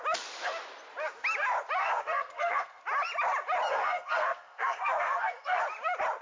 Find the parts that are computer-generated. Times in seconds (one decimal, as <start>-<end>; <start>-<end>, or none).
1.8-2.8; 3.7-5.6